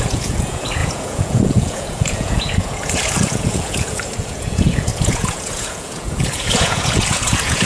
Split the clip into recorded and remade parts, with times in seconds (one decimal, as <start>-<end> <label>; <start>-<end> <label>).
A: 0.0-7.6 remade